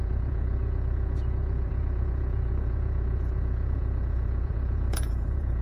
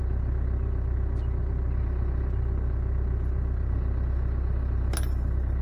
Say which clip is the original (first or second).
second